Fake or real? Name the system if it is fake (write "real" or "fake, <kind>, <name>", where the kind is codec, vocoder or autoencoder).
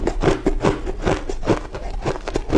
real